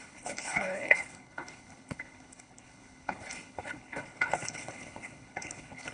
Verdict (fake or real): fake